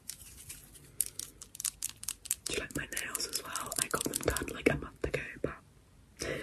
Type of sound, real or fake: real